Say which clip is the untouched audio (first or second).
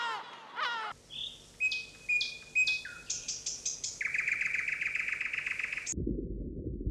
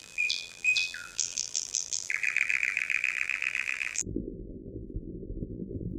first